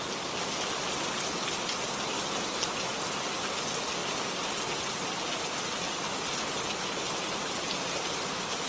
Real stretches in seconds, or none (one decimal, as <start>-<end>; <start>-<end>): 0.0-8.7